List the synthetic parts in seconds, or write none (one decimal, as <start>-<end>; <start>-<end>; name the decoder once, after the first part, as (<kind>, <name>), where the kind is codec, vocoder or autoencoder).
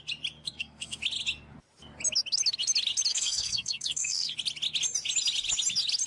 0.4-1.0 (codec, SNAC); 3.1-4.3